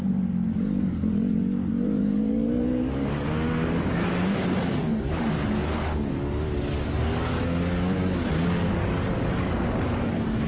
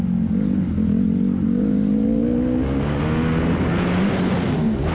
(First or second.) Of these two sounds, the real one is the second